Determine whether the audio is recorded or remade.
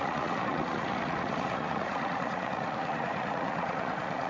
remade